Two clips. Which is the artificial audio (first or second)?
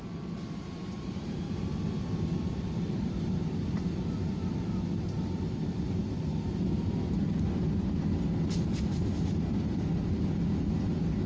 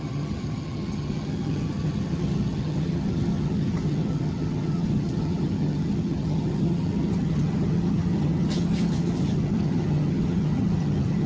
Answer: second